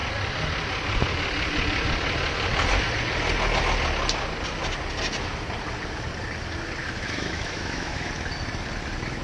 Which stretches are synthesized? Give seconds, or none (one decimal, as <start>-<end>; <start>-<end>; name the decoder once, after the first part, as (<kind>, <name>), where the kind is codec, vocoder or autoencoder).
6.8-8.1 (autoencoder, DAC-VAE)